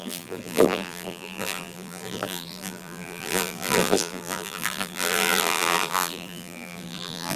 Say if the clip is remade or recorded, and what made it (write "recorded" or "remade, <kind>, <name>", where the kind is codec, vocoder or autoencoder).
remade, vocoder, BigVGAN v2